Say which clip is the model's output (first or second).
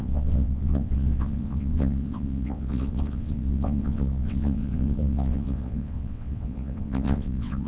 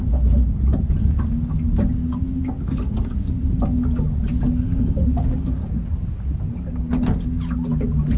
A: first